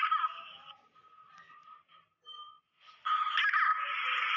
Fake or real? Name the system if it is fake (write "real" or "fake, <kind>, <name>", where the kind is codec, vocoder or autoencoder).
real